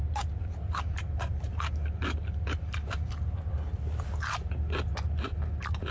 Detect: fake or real real